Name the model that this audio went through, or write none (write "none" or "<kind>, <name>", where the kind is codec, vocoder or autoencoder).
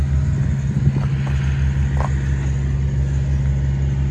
none